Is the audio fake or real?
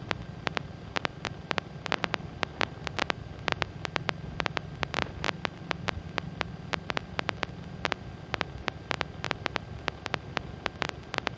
real